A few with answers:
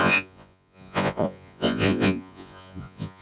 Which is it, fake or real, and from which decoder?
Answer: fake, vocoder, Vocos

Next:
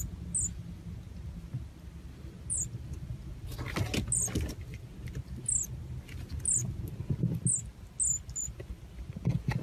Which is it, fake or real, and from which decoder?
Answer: real